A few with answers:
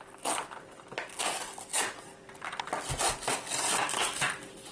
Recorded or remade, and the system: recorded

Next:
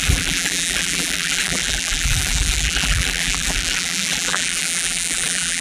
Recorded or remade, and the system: remade, vocoder, BigVGAN v2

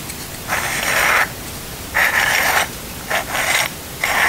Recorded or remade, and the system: remade, vocoder, BigVGAN v2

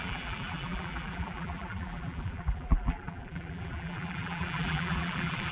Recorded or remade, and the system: remade, vocoder, BigVGAN v2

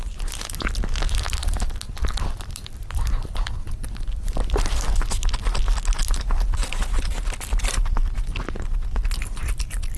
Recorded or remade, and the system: remade, vocoder, BigVGAN v2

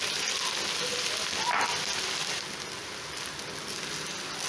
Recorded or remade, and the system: recorded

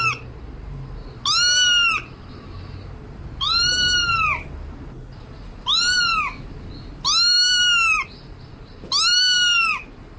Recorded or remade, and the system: recorded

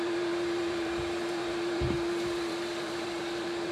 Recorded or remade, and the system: remade, vocoder, BigVGAN v2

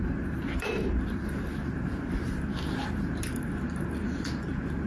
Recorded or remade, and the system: remade, vocoder, BigVGAN v2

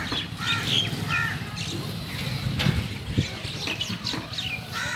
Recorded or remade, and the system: recorded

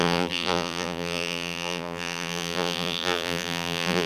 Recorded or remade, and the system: remade, vocoder, BigVGAN v2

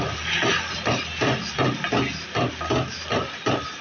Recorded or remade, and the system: recorded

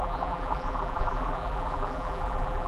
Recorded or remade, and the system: remade, vocoder, BigVGAN v2